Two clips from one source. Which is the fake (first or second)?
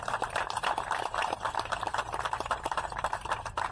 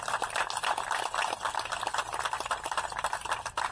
first